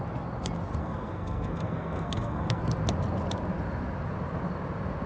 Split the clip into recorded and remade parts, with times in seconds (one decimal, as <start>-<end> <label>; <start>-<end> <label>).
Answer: 0.0-0.8 recorded; 0.8-2.6 remade; 2.6-5.1 recorded